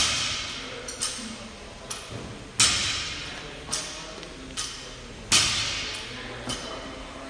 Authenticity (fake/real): real